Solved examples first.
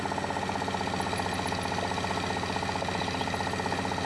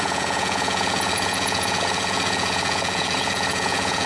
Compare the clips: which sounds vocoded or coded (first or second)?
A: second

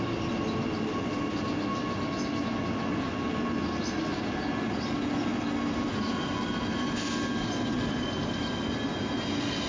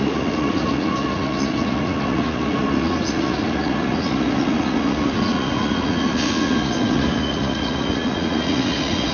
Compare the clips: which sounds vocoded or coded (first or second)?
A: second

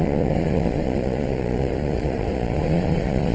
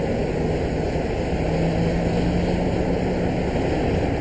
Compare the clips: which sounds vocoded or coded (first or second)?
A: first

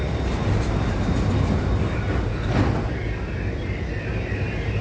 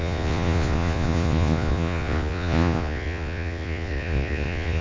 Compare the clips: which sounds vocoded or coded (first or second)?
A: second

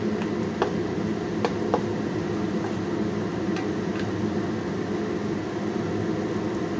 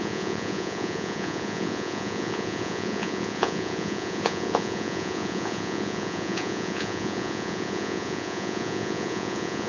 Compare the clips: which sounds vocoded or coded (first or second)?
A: second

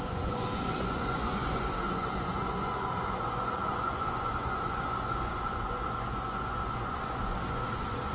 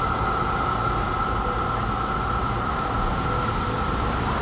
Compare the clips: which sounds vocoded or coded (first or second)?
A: first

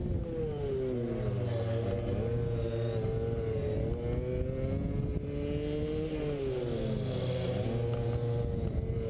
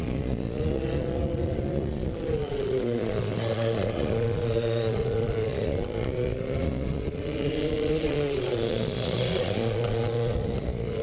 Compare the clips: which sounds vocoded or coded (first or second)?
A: second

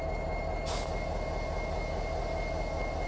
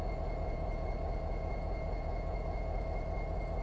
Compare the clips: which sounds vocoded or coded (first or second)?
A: second